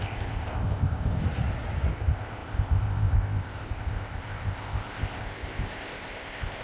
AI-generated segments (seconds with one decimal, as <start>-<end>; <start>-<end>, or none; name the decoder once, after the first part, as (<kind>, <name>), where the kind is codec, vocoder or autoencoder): 0.0-1.2 (codec, ZipCodec); 1.9-6.6